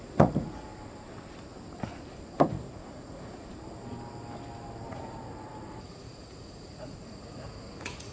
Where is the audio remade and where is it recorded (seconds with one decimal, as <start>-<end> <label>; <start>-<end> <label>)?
0.0-0.7 remade; 0.7-2.5 recorded; 2.5-3.5 remade; 3.5-4.9 recorded; 4.9-8.1 remade